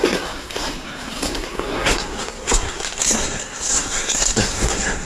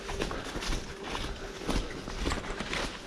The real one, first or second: second